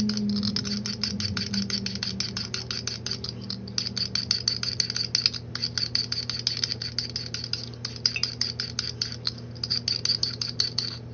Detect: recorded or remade recorded